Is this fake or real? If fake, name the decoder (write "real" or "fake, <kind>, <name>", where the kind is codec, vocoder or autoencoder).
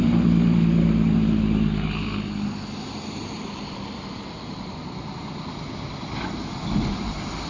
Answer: real